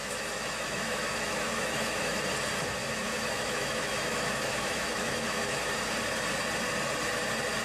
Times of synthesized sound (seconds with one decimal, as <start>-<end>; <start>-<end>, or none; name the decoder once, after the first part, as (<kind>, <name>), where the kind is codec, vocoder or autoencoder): 0.0-2.2 (autoencoder, DAC-VAE); 2.8-5.7